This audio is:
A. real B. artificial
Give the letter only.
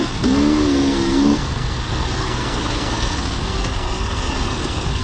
B